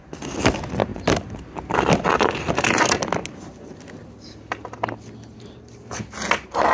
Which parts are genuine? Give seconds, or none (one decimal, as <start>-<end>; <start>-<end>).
0.0-6.7